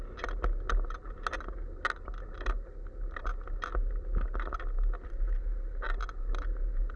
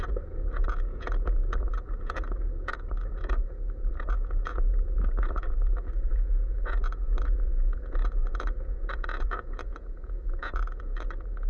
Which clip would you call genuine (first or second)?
first